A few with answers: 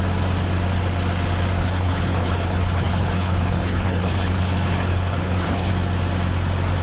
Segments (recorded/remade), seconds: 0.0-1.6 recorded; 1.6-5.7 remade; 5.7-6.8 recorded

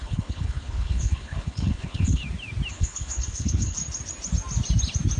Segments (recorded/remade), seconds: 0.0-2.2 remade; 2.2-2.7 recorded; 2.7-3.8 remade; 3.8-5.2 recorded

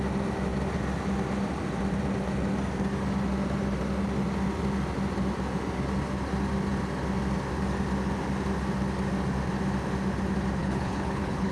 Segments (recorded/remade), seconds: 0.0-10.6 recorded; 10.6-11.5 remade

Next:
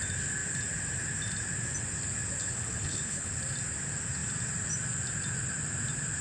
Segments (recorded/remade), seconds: 0.0-2.4 recorded; 2.4-3.4 remade; 3.4-6.2 recorded